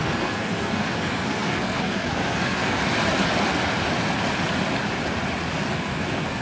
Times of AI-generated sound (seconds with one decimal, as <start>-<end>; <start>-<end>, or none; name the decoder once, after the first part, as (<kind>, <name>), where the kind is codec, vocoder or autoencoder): 0.0-2.8 (codec, SNAC); 5.7-6.4